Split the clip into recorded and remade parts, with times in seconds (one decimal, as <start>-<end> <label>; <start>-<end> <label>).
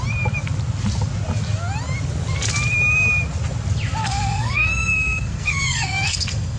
0.0-4.0 recorded; 4.0-6.6 remade